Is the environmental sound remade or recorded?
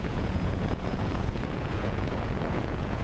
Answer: remade